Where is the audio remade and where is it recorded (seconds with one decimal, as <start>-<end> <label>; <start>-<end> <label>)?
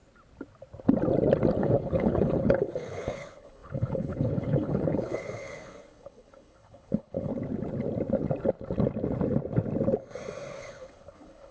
0.0-1.6 recorded; 1.6-7.3 remade; 7.3-10.5 recorded; 10.5-11.5 remade